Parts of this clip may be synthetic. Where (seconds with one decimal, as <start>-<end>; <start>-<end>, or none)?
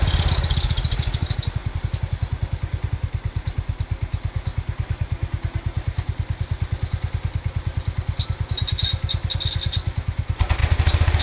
none